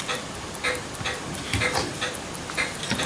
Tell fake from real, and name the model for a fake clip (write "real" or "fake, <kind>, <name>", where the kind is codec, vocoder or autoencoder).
real